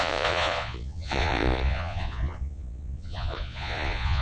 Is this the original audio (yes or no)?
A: no